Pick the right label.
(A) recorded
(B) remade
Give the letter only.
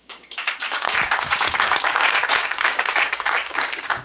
B